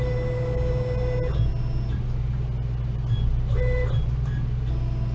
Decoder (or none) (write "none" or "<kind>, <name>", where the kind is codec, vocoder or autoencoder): none